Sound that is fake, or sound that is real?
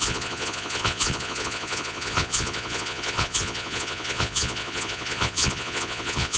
fake